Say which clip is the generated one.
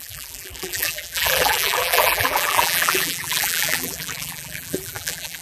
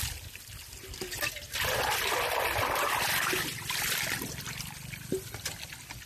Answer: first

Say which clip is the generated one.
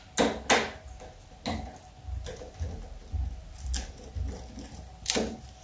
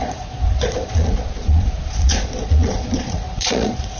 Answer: second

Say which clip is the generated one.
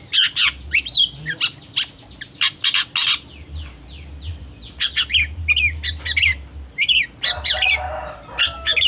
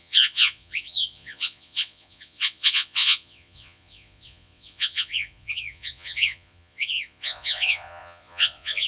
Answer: second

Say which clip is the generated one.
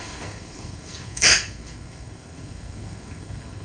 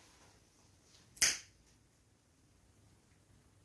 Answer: first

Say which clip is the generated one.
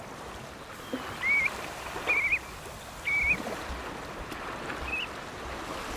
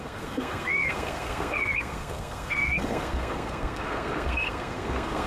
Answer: second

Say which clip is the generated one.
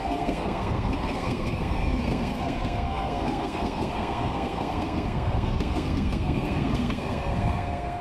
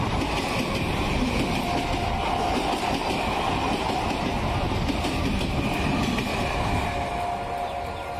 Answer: first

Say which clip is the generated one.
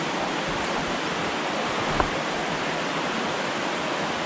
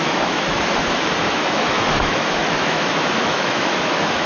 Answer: second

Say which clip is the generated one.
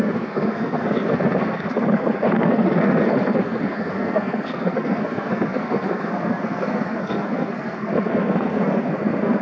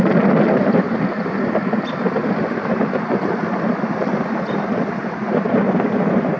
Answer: first